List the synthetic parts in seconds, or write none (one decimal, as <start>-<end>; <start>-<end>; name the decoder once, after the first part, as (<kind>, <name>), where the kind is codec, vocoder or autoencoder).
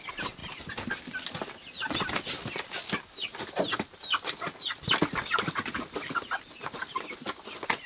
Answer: none